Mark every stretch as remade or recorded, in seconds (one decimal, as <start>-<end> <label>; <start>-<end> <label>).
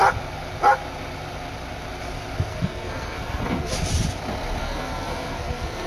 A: 0.0-2.5 recorded; 2.5-3.7 remade; 3.7-4.6 recorded; 4.6-5.9 remade